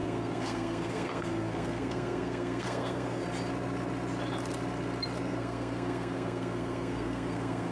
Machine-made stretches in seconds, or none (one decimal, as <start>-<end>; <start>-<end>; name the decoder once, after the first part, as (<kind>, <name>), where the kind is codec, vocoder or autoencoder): 0.0-3.2 (codec, SNAC); 5.2-7.7